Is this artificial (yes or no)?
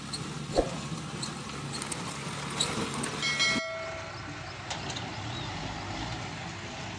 no